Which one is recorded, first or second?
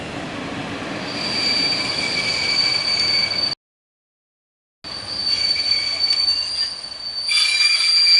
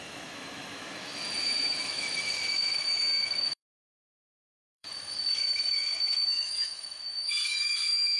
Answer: first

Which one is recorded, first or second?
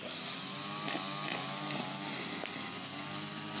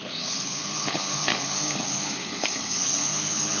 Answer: first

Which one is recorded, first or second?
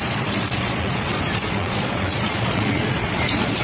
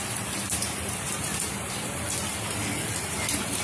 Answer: second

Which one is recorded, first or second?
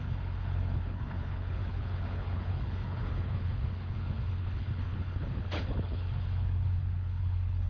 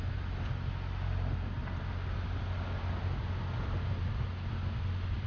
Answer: second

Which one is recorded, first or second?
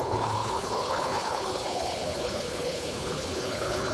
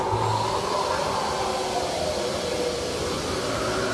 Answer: second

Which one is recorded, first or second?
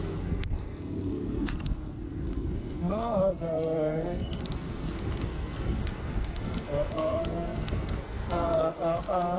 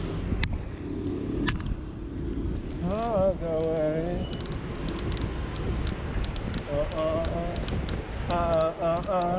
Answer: second